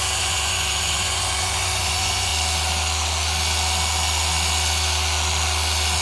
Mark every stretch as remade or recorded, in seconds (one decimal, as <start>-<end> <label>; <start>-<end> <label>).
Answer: 0.0-2.3 remade; 2.3-6.0 recorded